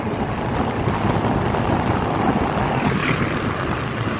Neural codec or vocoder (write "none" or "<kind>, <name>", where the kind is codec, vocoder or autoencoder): none